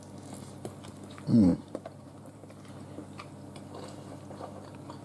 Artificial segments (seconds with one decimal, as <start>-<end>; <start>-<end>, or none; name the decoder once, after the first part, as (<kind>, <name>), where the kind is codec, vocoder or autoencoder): 1.5-2.7 (vocoder, BigVGAN v2)